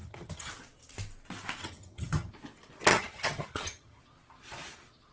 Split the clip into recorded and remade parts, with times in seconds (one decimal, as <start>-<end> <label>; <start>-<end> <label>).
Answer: 0.0-0.5 remade; 0.5-1.6 recorded; 1.6-2.3 remade; 2.3-2.9 recorded; 2.9-4.0 remade; 4.0-5.1 recorded